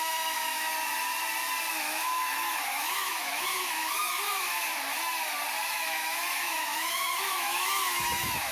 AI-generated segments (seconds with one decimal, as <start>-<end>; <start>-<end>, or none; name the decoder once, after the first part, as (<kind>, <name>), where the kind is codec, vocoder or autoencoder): 0.0-0.7 (autoencoder, DAC-VAE); 1.7-4.7; 5.7-8.5